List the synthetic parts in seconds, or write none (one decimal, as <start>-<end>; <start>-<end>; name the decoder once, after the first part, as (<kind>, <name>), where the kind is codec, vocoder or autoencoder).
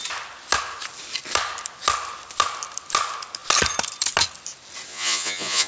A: 4.9-5.7 (vocoder, Vocos)